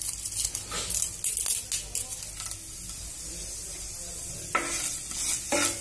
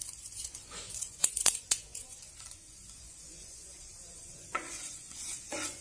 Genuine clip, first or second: first